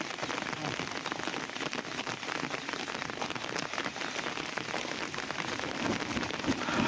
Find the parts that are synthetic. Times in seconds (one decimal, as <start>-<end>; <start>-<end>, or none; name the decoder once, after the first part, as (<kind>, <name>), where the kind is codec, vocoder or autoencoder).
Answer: 0.0-0.6 (vocoder, BigVGAN v2); 1.4-6.9